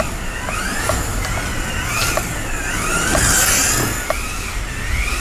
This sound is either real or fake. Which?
real